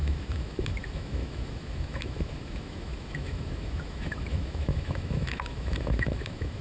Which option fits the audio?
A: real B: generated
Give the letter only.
B